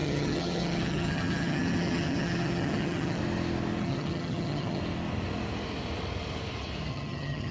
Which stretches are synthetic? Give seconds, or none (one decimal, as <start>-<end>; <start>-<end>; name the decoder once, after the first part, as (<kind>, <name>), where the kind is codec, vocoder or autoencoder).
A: 0.0-3.2 (vocoder, HiFi-GAN); 3.8-4.8; 6.9-7.5

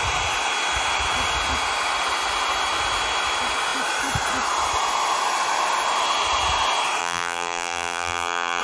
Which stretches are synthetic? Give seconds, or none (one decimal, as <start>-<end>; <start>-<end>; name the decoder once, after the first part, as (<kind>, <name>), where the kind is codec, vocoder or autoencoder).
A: 7.0-8.6 (vocoder, BigVGAN v2)

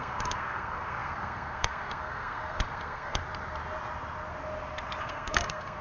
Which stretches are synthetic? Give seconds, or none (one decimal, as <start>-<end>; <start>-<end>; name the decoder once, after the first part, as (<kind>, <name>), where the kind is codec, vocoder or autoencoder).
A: 0.0-3.2 (codec, SNAC); 5.0-5.8

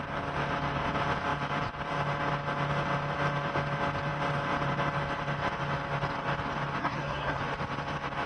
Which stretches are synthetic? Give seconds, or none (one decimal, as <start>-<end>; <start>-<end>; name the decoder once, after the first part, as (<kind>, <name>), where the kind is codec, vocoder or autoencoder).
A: 6.8-7.4 (codec, SNAC)

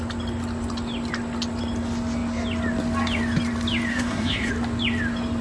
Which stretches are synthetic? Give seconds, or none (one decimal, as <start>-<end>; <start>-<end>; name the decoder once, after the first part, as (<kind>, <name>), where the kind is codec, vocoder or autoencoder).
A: 3.9-4.5 (codec, SNAC)

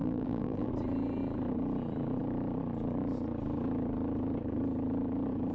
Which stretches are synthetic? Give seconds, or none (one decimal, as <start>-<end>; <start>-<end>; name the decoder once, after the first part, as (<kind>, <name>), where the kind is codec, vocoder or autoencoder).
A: 0.0-0.7 (vocoder, BigVGAN v2)

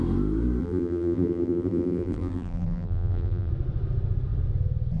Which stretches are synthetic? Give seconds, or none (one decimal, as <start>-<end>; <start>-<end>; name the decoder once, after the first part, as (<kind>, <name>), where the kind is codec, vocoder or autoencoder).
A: 0.6-3.5 (vocoder, BigVGAN v2)

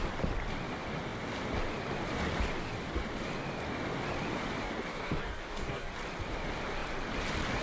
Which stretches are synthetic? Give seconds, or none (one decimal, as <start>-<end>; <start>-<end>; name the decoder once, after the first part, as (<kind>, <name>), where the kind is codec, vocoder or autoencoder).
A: 4.9-5.9 (codec, DAC)